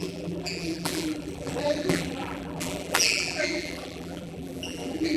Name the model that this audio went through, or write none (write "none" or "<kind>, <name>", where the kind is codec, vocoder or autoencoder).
vocoder, BigVGAN v2